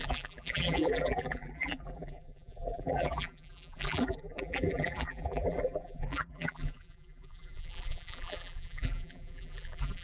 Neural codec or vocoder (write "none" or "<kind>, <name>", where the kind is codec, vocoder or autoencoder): vocoder, BigVGAN v2